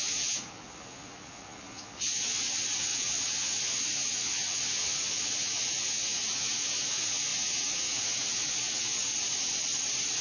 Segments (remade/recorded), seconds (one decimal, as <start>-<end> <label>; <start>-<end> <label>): 0.0-9.1 remade; 9.1-10.2 recorded